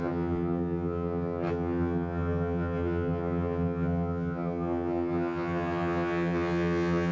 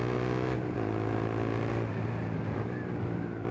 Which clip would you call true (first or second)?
second